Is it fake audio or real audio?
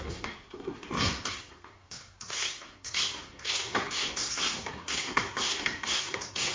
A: fake